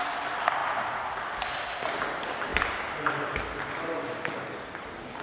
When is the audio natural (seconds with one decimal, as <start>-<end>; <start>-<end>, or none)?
0.0-5.2